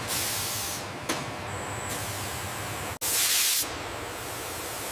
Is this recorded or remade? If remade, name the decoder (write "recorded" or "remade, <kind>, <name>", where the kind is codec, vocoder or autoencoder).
recorded